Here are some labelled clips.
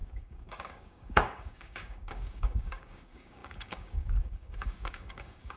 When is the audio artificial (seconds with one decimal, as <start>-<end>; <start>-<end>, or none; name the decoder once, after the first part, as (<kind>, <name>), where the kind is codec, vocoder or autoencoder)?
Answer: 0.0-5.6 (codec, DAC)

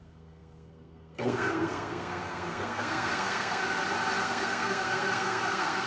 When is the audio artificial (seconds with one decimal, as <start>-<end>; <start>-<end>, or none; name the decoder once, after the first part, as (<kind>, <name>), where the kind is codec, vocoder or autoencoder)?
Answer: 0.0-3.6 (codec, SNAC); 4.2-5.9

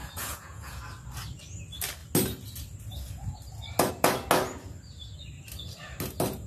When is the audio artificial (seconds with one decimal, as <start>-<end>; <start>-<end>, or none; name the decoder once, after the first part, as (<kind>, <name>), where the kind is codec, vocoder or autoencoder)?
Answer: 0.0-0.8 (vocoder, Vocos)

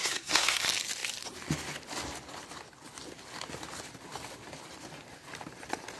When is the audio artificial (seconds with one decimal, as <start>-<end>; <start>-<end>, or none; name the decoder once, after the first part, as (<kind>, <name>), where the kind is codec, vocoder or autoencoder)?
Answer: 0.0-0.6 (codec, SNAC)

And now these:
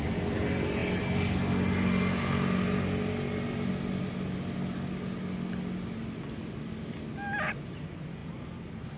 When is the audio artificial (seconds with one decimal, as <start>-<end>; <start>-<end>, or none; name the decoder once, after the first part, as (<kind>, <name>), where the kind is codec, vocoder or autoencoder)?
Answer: none

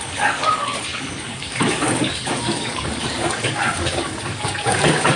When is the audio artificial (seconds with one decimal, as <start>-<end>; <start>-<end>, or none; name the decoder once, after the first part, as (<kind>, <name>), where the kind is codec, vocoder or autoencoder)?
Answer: 0.0-5.2 (codec, DAC)

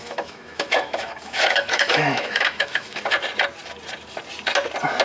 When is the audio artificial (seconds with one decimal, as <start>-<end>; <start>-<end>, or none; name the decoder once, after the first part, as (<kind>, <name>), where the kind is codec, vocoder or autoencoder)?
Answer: 0.0-3.0 (autoencoder, DAC-VAE)